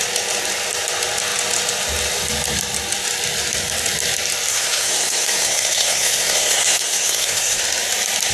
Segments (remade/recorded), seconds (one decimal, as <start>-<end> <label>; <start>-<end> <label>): 0.0-4.5 recorded; 4.5-7.6 remade; 7.6-8.3 recorded